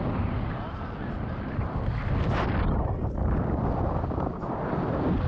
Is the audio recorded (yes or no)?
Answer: yes